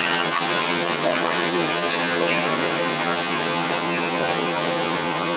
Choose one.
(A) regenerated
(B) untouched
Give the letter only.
A